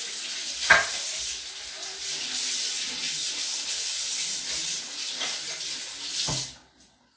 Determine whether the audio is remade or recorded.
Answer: recorded